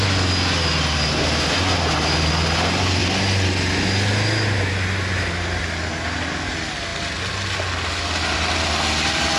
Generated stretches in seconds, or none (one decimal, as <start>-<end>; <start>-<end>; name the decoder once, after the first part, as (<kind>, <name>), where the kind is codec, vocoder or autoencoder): none